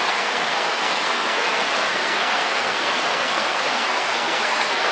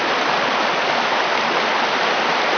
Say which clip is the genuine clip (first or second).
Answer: second